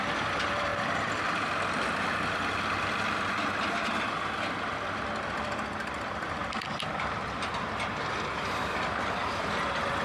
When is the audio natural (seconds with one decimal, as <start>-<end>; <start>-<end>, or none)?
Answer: 6.4-9.6